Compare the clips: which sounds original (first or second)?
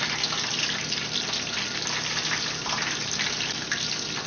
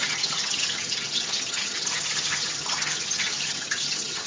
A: first